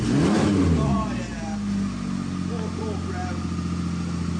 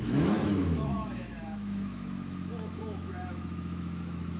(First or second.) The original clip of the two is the first